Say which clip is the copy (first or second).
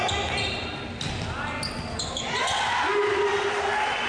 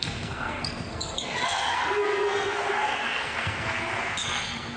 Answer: second